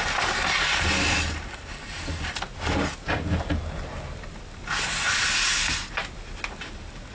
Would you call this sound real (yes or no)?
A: yes